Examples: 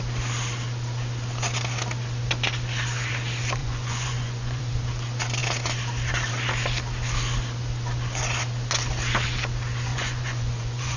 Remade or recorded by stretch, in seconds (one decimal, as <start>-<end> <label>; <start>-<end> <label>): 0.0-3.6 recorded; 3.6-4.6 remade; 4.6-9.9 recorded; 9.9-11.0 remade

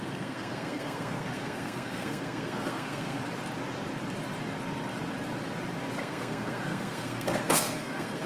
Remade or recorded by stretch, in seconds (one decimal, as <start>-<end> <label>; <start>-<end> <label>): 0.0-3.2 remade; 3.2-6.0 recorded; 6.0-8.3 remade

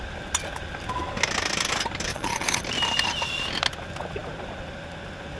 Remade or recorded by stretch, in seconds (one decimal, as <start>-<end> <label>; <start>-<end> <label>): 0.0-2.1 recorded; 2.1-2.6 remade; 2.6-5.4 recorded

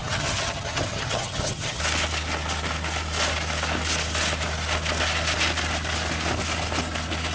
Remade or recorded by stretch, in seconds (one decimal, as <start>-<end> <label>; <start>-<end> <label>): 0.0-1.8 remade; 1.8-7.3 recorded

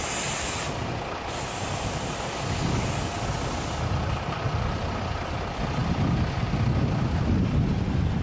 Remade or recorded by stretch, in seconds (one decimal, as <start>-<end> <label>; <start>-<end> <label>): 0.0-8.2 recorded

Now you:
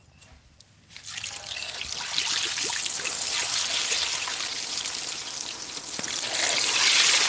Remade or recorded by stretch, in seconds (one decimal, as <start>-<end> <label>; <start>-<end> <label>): 0.0-4.5 recorded; 4.5-5.2 remade; 5.2-7.3 recorded